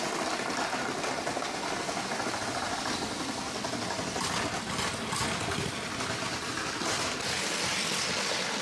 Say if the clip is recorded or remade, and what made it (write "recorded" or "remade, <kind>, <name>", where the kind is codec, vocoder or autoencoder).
recorded